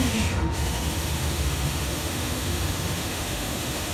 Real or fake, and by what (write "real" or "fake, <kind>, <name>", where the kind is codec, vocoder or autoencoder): fake, autoencoder, DAC-VAE